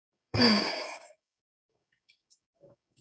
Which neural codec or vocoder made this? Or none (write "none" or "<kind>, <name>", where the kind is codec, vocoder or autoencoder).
codec, DAC